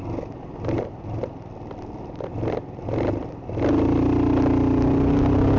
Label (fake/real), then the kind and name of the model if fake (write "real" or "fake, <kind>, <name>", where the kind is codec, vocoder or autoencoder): real